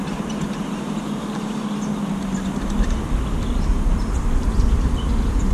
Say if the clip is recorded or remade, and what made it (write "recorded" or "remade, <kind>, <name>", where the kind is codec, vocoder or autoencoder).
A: recorded